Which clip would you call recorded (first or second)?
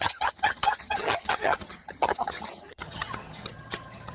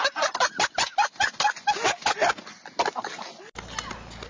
second